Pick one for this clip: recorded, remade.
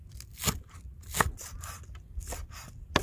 recorded